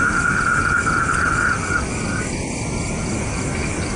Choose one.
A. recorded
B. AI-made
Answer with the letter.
A